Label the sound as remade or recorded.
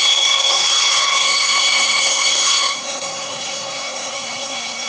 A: remade